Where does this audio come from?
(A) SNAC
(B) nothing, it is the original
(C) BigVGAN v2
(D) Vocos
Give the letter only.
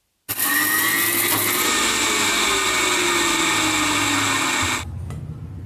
B